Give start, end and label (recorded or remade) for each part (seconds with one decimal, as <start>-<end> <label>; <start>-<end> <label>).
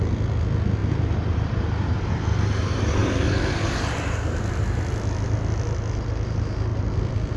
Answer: 0.0-0.8 recorded; 0.8-2.1 remade; 2.1-3.0 recorded; 3.0-4.6 remade; 4.6-6.7 recorded; 6.7-7.4 remade